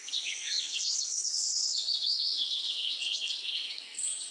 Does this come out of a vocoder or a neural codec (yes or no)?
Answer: yes